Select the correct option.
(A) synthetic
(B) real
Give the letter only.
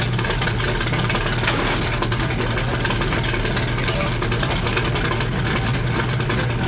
B